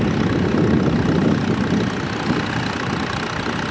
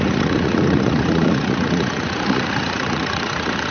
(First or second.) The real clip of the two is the first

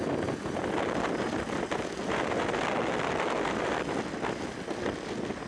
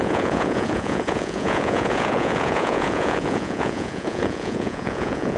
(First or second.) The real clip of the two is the first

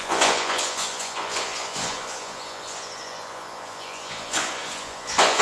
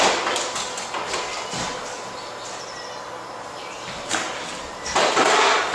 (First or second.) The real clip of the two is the second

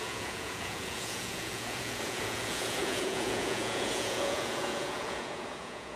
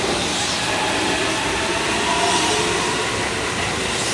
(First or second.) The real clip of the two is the second